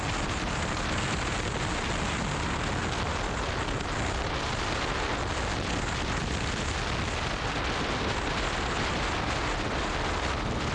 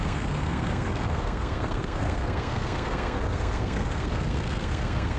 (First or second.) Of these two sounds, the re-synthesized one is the second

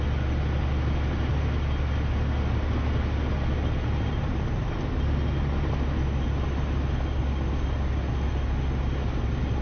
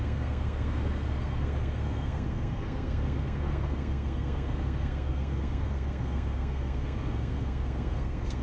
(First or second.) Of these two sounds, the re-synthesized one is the second